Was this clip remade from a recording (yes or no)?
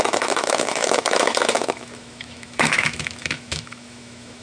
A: yes